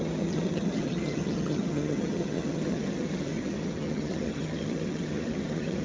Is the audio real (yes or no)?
no